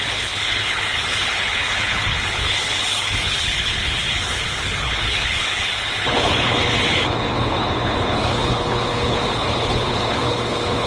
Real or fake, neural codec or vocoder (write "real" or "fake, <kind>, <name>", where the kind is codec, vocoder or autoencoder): fake, codec, HILCodec